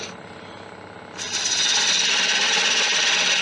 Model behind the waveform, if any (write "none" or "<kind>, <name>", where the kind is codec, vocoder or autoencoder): none